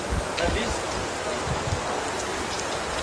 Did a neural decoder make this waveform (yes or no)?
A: no